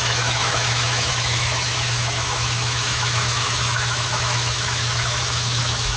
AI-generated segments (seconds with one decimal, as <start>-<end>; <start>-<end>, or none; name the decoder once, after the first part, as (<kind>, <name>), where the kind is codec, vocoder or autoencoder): 0.0-6.0 (autoencoder, DAC-VAE)